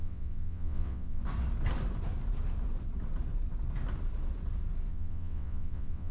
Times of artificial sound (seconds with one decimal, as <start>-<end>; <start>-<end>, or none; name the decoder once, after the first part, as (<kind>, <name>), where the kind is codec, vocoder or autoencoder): 0.0-1.2 (vocoder, WaveNeXt); 4.9-6.1